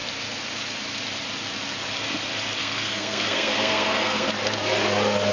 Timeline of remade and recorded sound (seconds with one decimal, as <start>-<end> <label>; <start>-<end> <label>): 0.0-2.6 recorded; 2.6-4.3 remade; 4.3-5.3 recorded

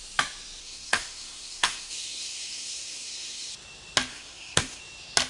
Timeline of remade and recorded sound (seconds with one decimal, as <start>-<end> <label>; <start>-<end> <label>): 0.0-0.6 recorded; 0.6-3.5 remade; 3.5-4.1 recorded; 4.1-4.8 remade; 4.8-5.3 recorded

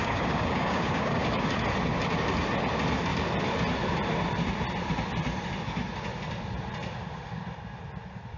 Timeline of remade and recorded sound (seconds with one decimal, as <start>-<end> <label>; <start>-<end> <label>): 0.0-1.5 remade; 1.5-8.4 recorded

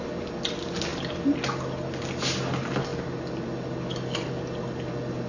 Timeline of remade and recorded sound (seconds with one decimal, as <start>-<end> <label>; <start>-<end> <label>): 0.0-5.3 recorded